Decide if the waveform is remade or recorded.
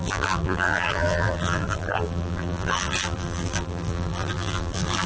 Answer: remade